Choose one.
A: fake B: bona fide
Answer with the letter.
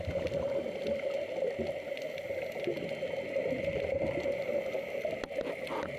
B